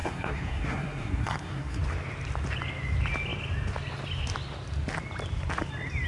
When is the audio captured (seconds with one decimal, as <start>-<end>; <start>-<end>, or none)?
1.8-6.1